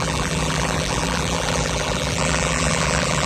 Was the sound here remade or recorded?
remade